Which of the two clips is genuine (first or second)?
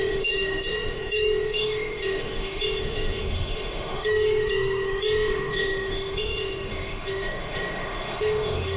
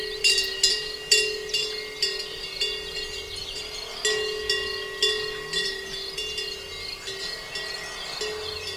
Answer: second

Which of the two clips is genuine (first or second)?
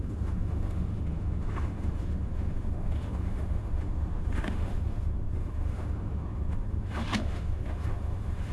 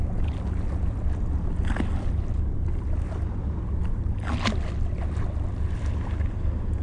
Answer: second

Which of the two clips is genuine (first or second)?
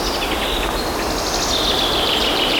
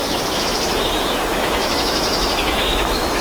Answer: first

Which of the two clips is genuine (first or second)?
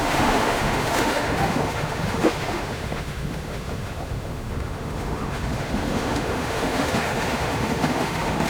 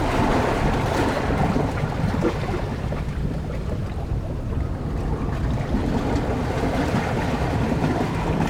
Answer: second